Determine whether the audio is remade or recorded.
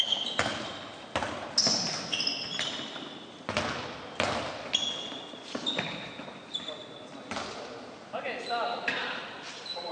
recorded